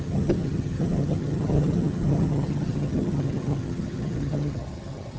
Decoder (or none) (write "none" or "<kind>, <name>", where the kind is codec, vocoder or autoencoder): vocoder, HiFi-GAN